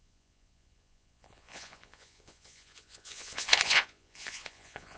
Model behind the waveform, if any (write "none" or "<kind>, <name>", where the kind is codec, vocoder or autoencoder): vocoder, Vocos